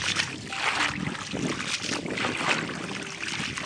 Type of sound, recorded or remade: recorded